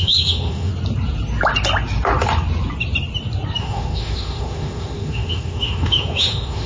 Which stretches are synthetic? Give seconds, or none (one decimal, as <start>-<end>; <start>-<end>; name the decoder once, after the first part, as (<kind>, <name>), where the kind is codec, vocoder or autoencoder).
0.0-0.7 (autoencoder, DAC-VAE); 3.6-6.7